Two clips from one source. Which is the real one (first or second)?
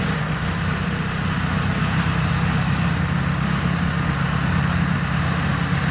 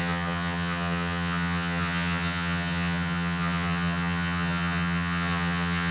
first